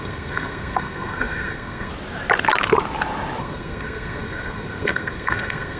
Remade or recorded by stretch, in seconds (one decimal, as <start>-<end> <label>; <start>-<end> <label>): 0.0-1.9 remade; 1.9-3.4 recorded; 3.4-5.8 remade